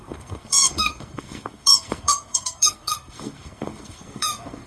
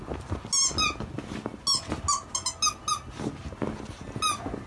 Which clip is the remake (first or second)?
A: first